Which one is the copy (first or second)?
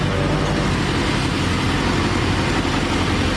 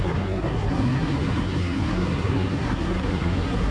second